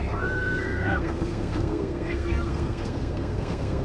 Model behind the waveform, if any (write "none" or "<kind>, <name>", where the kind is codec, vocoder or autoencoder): codec, SNAC